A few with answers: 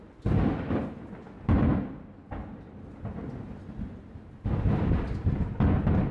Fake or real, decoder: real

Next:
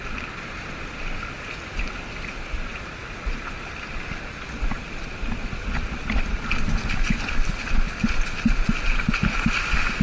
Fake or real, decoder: real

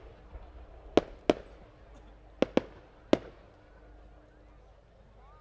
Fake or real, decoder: real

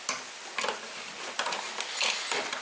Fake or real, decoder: real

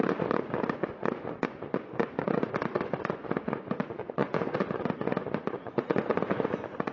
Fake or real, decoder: fake, vocoder, Vocos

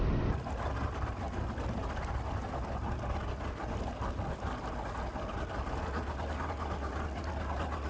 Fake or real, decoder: real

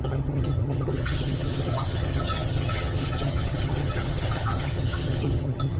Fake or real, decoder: fake, vocoder, HiFi-GAN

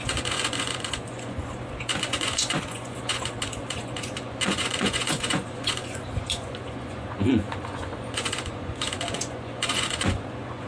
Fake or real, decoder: fake, vocoder, Vocos